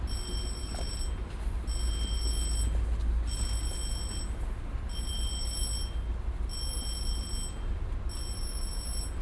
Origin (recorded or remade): recorded